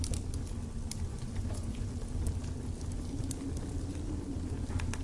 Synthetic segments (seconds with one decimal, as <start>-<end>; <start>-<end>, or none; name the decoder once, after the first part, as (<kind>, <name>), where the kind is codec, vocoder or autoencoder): 1.1-1.9 (vocoder, Vocos)